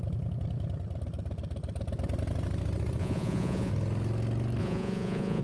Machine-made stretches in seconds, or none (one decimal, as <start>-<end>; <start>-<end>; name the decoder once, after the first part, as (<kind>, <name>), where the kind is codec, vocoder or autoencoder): 3.0-3.7 (vocoder, Vocos); 4.6-5.4